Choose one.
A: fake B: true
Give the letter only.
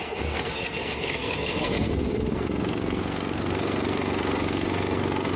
A